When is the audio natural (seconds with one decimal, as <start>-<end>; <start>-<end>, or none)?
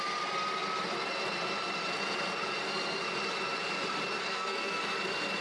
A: 0.0-4.2; 4.8-5.4